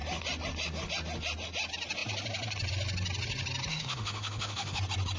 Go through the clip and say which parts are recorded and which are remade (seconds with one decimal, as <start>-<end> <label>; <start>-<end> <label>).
0.0-3.7 recorded; 3.7-4.8 remade; 4.8-5.2 recorded